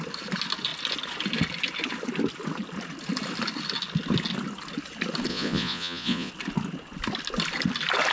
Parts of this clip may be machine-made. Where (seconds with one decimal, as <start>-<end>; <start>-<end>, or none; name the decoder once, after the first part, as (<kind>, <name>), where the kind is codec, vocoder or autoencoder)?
5.3-6.3 (vocoder, Vocos)